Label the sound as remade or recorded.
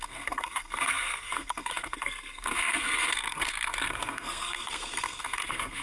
remade